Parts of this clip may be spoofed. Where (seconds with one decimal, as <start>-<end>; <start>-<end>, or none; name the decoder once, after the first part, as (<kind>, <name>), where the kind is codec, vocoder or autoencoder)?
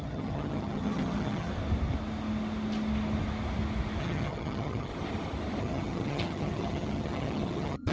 0.0-1.5 (vocoder, HiFi-GAN); 4.0-4.9; 5.6-7.9